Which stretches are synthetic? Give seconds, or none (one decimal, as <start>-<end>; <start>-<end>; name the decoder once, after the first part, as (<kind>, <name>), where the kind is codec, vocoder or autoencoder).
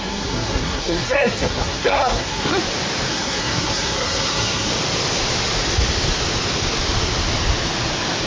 0.0-2.5 (codec, SNAC); 3.1-4.7